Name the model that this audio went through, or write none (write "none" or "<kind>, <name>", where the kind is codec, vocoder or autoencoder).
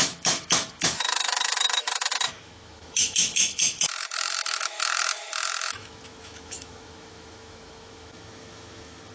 autoencoder, DAC-VAE